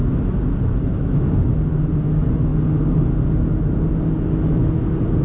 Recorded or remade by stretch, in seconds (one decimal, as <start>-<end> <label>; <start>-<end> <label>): 0.0-5.2 recorded